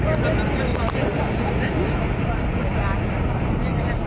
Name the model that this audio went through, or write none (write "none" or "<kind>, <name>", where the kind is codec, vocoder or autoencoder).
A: none